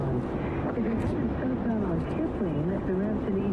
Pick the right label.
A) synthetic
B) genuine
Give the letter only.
B